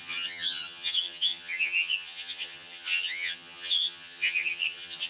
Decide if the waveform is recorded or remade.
remade